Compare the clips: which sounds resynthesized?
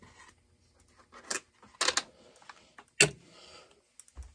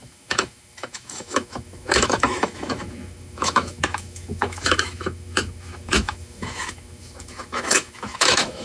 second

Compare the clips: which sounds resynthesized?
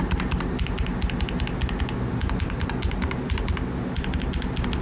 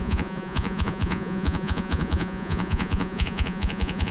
second